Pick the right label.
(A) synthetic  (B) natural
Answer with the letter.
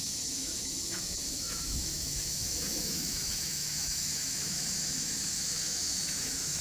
A